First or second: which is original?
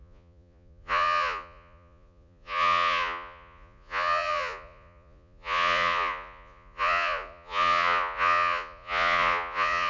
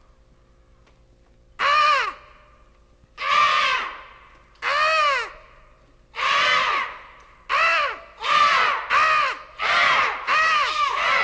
second